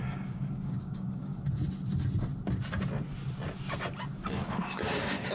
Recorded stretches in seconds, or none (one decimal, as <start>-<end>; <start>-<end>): 1.3-4.5